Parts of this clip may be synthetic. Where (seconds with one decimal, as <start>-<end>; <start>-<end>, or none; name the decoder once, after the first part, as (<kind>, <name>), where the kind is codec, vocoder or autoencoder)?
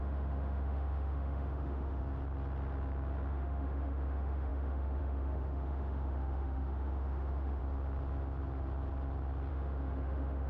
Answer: 0.0-2.0 (autoencoder, DAC-VAE); 3.3-7.6; 9.5-10.5